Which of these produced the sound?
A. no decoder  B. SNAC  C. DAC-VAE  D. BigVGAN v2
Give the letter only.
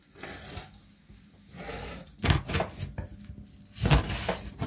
A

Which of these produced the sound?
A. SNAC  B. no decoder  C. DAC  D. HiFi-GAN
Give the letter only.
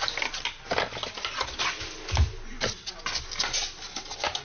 B